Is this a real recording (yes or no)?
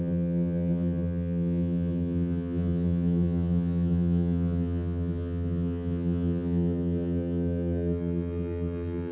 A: no